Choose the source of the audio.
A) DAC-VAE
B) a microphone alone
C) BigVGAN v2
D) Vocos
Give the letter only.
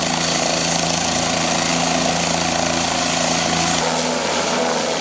B